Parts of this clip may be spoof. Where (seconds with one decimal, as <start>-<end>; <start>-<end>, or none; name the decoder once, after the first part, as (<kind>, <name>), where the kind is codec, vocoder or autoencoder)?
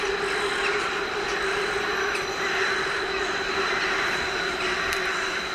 1.9-4.8 (vocoder, BigVGAN v2)